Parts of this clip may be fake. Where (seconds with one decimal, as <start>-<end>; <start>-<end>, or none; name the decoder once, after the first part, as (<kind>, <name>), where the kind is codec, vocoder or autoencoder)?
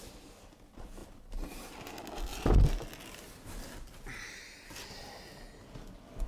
none